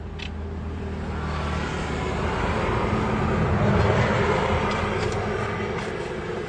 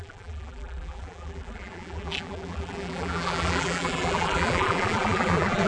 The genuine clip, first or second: first